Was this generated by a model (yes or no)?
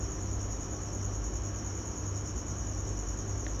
no